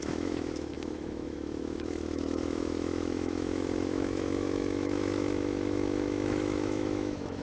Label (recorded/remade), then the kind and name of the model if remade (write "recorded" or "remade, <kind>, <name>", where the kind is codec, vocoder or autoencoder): remade, autoencoder, DAC-VAE